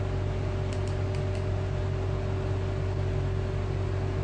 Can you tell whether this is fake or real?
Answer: real